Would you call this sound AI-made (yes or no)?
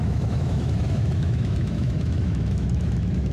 yes